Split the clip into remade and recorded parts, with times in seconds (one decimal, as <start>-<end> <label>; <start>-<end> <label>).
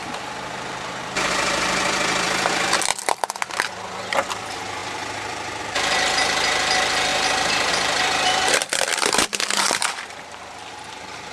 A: 0.0-2.9 remade; 2.9-4.3 recorded; 4.3-7.1 remade; 7.1-7.7 recorded; 7.7-11.3 remade